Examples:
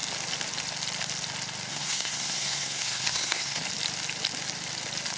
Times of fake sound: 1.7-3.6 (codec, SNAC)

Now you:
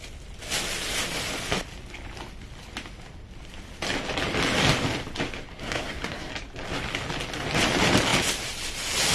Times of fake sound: 5.5-6.3 (codec, SNAC)

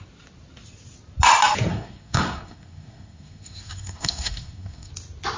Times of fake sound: 1.7-4.9 (codec, SNAC)

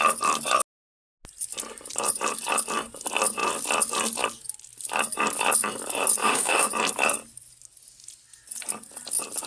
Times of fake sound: 6.2-6.7 (autoencoder, DAC-VAE)

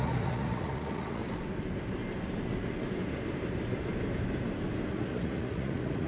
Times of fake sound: 0.0-1.2 (vocoder, Vocos); 4.9-6.1

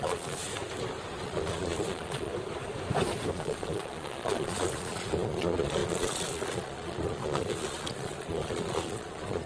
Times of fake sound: 0.0-0.5 (vocoder, Vocos); 1.2-2.3; 3.3-9.5

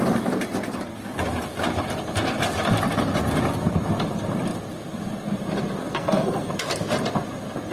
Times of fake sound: 5.8-6.5 (codec, SNAC)